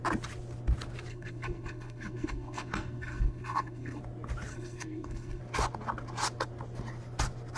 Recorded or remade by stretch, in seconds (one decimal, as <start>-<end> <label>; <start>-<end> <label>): 0.0-1.1 recorded; 1.1-4.0 remade; 4.0-4.5 recorded; 4.5-5.4 remade; 5.4-7.6 recorded